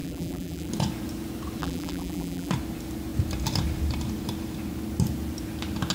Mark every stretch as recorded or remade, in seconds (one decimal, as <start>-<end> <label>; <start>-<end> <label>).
0.0-0.7 remade; 0.7-1.6 recorded; 1.6-2.5 remade; 2.5-5.9 recorded